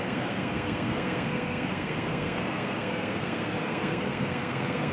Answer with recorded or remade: remade